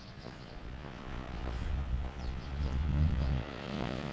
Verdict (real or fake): fake